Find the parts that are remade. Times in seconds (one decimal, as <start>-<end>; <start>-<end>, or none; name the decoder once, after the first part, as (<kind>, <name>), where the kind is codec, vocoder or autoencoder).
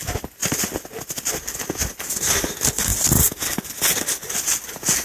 none